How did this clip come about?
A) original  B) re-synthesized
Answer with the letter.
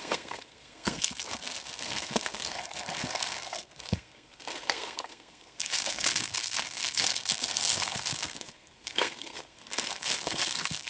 B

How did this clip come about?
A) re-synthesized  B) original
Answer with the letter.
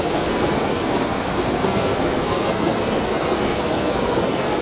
A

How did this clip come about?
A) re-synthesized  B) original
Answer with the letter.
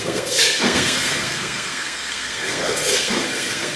A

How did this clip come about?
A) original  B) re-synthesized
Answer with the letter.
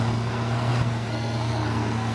B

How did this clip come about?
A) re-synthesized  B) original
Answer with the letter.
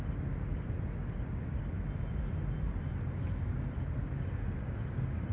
B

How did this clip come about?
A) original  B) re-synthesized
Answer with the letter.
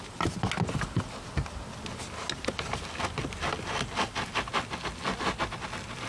A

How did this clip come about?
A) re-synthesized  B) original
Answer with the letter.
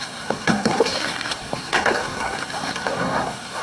A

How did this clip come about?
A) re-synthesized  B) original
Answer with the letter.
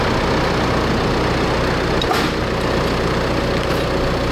B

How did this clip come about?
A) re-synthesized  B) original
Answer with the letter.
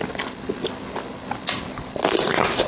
B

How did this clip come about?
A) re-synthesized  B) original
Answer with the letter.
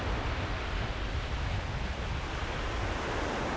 B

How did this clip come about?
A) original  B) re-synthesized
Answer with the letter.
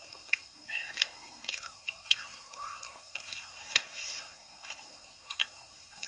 B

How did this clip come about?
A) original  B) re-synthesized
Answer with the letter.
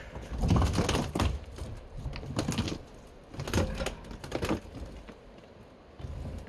A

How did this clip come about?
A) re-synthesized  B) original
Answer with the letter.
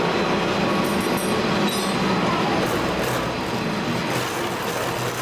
B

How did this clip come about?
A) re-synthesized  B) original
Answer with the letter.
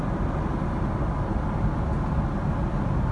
B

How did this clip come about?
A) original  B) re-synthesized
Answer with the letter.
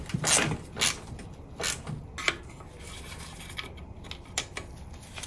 A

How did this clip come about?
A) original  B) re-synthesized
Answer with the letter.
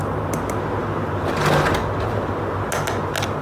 A